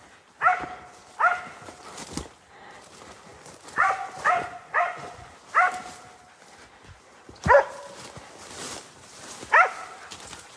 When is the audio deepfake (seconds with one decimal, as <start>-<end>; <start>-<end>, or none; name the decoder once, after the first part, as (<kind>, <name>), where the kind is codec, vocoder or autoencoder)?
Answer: 3.3-5.3 (vocoder, Vocos)